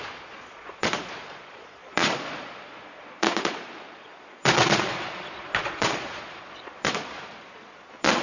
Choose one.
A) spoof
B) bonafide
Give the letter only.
A